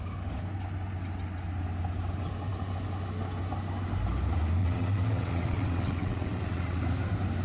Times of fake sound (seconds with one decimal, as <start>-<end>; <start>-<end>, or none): 4.6-6.8